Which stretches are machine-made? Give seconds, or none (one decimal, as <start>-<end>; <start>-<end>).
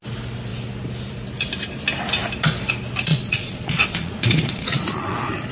3.1-5.5